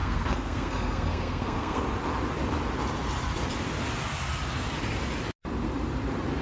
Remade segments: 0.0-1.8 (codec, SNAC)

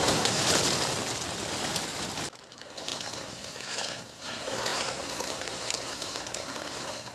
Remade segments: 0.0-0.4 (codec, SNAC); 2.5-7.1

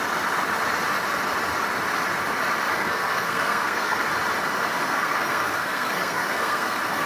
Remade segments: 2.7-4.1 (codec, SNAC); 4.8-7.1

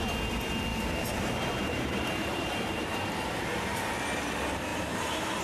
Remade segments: 0.7-3.9 (vocoder, BigVGAN v2); 4.7-5.4

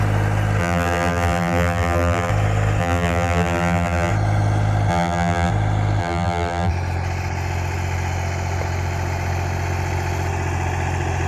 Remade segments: 0.6-2.3 (vocoder, BigVGAN v2); 2.8-4.1; 4.9-5.5; 6.0-6.7

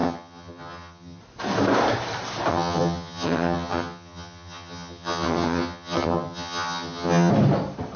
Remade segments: 0.0-1.2 (vocoder, HiFi-GAN); 2.5-7.3